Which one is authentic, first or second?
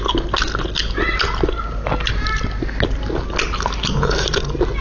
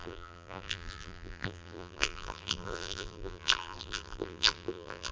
first